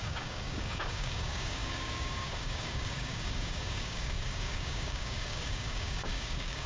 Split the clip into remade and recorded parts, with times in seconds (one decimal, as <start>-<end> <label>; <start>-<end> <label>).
0.0-6.7 remade